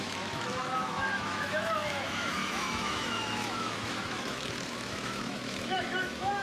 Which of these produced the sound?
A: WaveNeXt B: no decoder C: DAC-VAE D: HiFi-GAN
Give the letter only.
C